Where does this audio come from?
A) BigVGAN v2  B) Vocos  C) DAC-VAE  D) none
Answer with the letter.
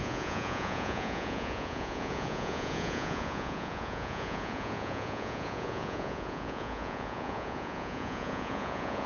B